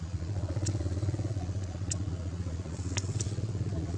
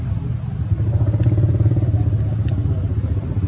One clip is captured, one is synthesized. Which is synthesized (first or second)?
first